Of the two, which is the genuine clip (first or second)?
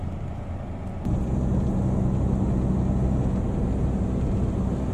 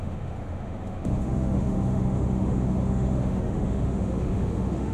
first